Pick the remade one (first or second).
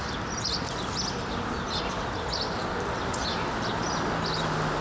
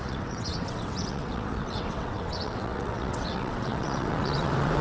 second